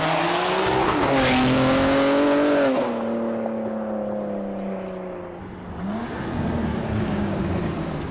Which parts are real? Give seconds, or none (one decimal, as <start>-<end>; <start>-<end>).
0.0-6.7; 7.4-8.1